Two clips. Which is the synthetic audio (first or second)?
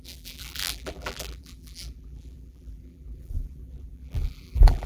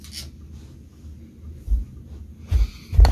first